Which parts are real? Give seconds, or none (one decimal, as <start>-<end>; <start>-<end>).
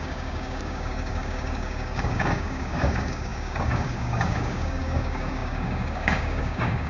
none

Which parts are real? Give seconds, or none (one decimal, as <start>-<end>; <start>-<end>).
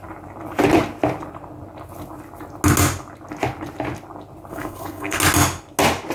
0.0-4.5; 5.2-6.1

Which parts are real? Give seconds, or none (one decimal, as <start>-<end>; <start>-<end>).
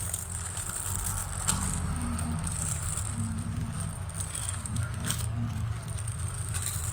0.0-4.4; 5.8-6.9